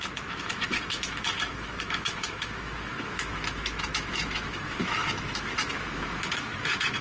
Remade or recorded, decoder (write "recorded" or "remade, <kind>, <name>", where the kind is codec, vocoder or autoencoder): remade, autoencoder, DAC-VAE